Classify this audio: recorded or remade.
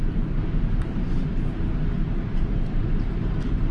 remade